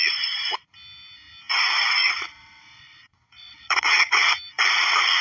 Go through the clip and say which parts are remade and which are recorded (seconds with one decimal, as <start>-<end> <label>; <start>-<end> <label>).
0.0-2.0 recorded; 2.0-4.3 remade; 4.3-5.2 recorded